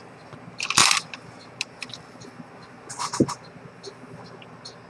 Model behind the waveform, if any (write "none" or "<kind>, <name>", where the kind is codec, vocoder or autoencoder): none